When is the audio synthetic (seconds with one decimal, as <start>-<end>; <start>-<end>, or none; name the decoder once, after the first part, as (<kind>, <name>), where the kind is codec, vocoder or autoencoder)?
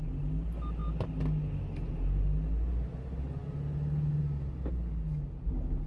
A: none